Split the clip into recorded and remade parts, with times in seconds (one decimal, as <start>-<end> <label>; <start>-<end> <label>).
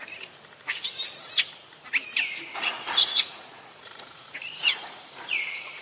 0.0-2.3 recorded; 2.3-5.8 remade